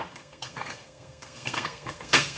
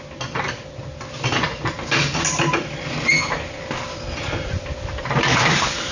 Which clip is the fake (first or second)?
first